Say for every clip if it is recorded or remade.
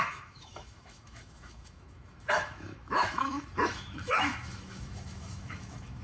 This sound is remade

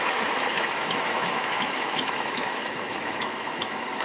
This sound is remade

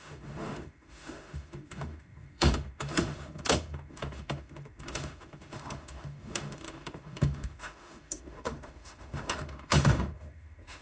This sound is remade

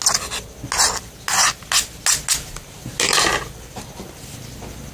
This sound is recorded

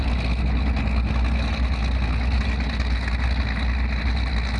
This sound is recorded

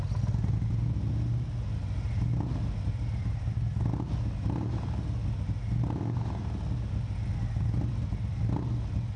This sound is recorded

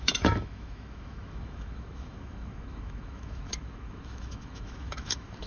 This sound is remade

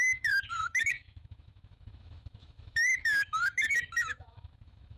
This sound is remade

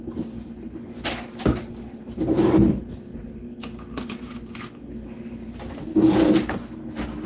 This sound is recorded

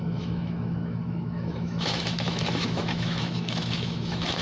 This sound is remade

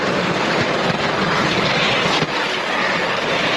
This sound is recorded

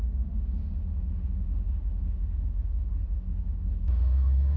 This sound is remade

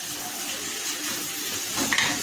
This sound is recorded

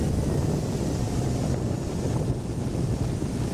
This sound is recorded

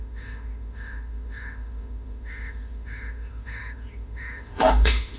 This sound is remade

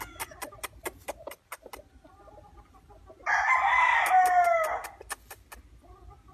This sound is recorded